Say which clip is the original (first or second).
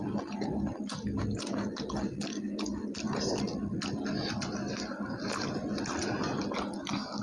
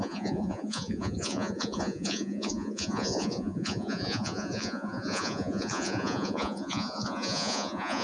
first